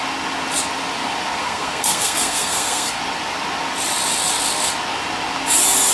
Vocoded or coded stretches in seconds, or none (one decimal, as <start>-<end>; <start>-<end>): 1.4-3.0

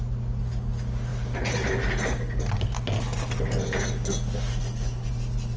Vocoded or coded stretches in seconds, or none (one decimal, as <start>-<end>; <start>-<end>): 4.5-5.1

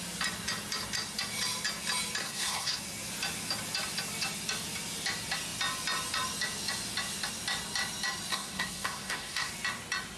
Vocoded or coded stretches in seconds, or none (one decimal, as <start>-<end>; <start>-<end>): 2.2-2.8; 8.3-9.5

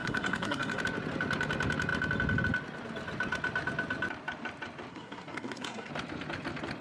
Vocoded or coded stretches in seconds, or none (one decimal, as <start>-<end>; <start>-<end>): 0.0-0.8; 4.9-5.9

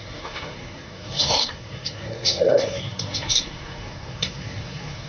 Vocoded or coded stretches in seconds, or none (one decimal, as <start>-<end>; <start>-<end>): 0.0-5.1

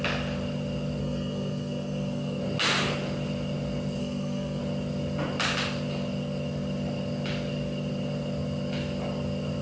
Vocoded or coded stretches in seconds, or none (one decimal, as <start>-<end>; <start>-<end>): 1.0-2.4; 4.0-4.6